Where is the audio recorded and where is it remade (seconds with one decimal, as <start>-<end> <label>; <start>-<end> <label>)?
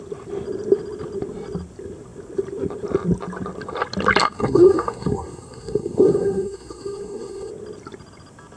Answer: 0.0-4.2 recorded; 4.2-7.5 remade; 7.5-8.6 recorded